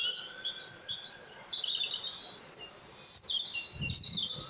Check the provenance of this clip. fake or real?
real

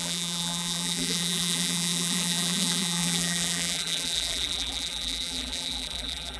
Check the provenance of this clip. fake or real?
fake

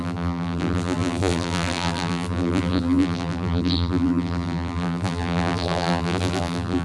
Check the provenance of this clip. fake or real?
fake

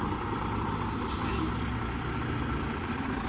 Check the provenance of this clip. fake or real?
real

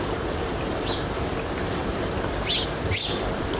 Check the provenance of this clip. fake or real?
fake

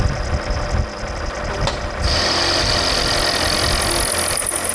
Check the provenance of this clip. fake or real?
real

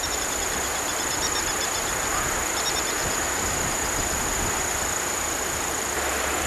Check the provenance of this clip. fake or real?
fake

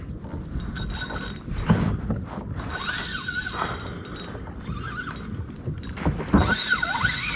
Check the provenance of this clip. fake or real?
real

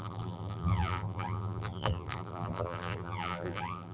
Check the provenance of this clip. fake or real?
fake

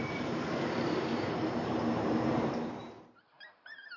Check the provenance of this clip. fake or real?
fake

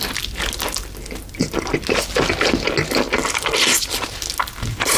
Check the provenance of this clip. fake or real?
real